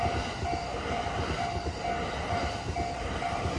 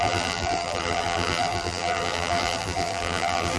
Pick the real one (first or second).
first